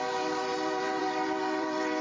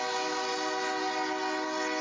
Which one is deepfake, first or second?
first